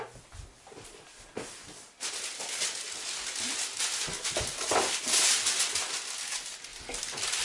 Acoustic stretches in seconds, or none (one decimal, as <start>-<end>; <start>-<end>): 0.0-6.7